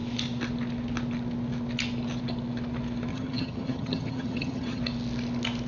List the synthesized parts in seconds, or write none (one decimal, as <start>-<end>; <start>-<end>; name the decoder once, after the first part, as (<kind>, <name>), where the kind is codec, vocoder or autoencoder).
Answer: 3.1-4.8 (vocoder, HiFi-GAN)